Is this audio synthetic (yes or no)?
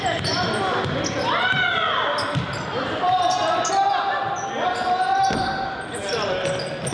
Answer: no